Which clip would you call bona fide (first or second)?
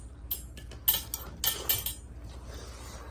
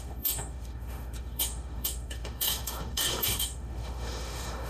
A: first